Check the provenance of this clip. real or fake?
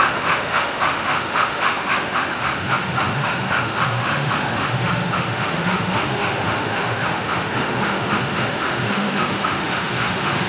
fake